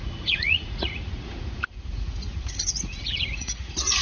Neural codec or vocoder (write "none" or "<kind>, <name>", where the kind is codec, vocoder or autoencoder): vocoder, Vocos